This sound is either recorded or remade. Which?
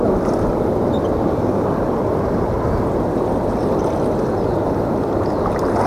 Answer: recorded